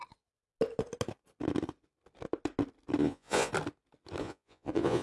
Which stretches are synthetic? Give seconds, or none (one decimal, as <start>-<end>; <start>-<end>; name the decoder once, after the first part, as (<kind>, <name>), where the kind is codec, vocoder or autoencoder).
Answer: 3.0-3.5 (vocoder, Vocos); 4.2-5.0